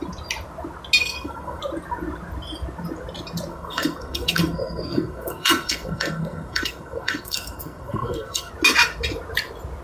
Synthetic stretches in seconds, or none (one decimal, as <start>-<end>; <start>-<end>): 1.0-1.6; 3.5-8.5